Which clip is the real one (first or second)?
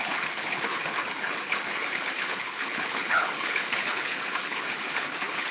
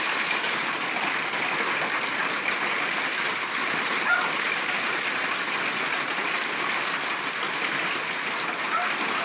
second